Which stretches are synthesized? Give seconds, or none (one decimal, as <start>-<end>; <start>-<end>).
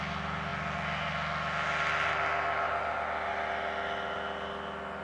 none